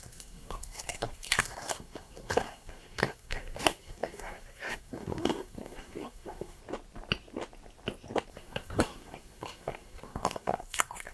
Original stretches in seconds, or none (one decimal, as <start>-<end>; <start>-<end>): 6.6-8.3